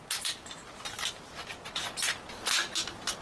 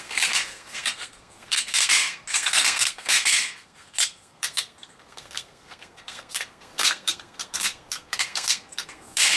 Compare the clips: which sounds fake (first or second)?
second